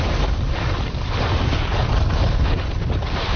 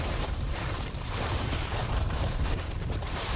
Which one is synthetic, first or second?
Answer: second